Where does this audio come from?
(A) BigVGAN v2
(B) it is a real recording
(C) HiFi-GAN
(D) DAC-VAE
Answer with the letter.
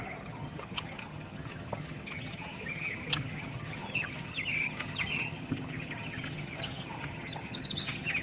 C